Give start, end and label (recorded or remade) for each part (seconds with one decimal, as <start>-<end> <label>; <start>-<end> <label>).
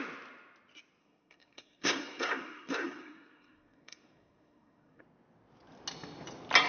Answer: 0.0-1.0 recorded; 1.0-5.0 remade; 5.0-6.7 recorded